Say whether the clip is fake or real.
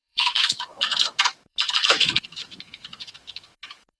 fake